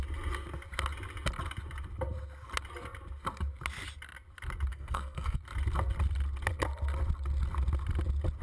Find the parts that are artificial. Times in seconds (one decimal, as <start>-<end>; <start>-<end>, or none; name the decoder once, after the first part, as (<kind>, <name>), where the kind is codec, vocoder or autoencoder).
4.7-5.4 (codec, SNAC)